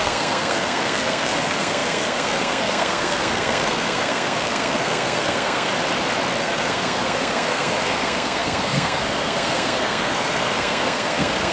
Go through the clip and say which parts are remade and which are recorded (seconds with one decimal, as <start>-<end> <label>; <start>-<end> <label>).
0.0-5.7 remade; 5.7-6.4 recorded; 6.4-11.5 remade